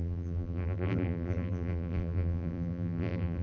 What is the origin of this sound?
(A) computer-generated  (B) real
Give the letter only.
A